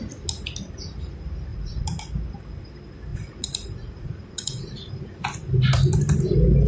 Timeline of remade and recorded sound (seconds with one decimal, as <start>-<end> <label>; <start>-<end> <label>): 0.0-1.5 recorded; 1.5-2.0 remade; 2.0-3.1 recorded; 3.1-4.9 remade; 4.9-6.7 recorded